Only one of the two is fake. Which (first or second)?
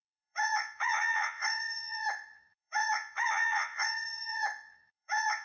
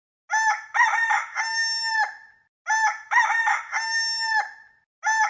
first